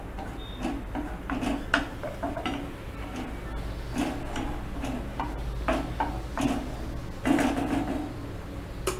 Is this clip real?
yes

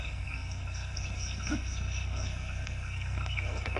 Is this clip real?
no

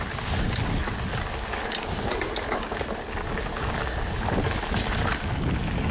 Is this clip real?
yes